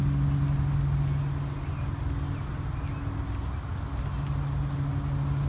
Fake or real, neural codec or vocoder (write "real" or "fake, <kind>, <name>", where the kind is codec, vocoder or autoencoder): real